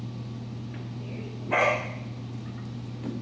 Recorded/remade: recorded